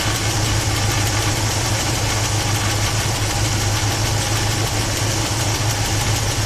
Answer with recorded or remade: recorded